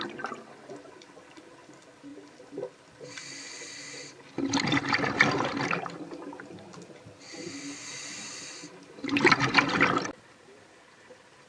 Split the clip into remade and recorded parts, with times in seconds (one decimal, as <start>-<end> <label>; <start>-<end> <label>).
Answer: 0.0-11.5 recorded